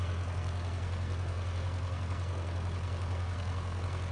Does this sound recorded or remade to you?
remade